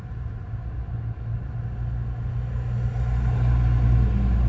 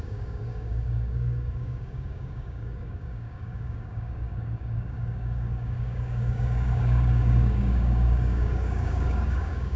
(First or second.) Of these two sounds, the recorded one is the first